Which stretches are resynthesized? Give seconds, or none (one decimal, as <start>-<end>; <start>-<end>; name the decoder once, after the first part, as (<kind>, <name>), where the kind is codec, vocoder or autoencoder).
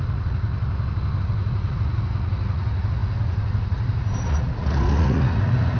0.0-0.5 (vocoder, Vocos); 1.2-5.8